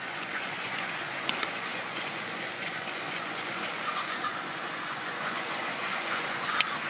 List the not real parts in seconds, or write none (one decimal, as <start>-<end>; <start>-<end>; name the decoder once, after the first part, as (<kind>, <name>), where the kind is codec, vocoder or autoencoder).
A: 0.0-6.9 (vocoder, Vocos)